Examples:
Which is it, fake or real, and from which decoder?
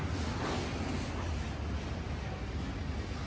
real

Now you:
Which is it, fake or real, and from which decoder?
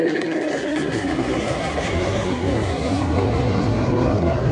fake, codec, SNAC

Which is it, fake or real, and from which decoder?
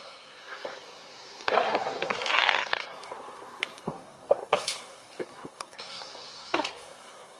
fake, codec, SNAC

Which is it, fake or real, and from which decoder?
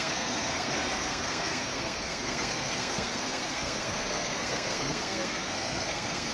fake, codec, SNAC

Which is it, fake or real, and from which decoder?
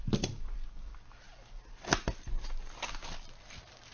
real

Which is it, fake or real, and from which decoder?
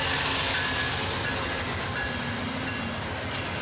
real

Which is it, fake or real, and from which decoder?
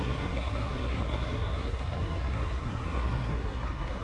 fake, codec, SNAC